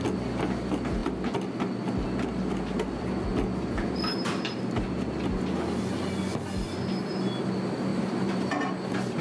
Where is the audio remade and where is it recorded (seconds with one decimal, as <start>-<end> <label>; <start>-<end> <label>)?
0.0-7.9 recorded; 7.9-8.7 remade; 8.7-9.2 recorded